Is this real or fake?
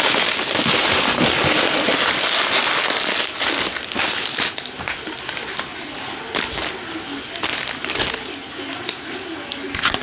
real